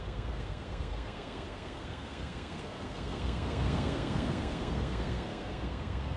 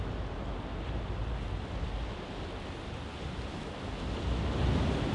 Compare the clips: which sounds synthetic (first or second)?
first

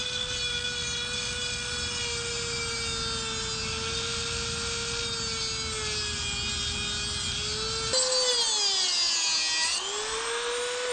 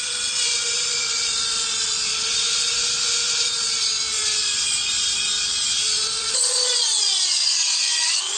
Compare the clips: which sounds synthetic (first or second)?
second